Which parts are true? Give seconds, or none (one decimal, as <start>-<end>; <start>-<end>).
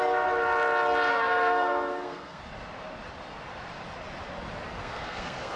0.0-1.1; 2.4-4.8